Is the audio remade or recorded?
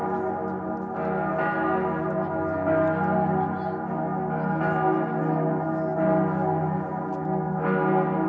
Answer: recorded